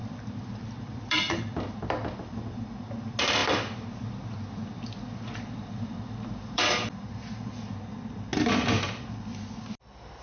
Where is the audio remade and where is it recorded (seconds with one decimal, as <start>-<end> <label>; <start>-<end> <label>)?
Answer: 0.0-1.4 remade; 1.4-3.4 recorded; 3.4-6.6 remade; 6.6-10.2 recorded